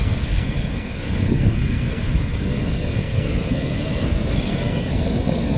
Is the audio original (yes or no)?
no